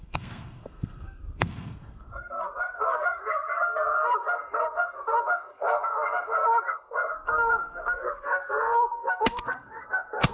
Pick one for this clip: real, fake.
fake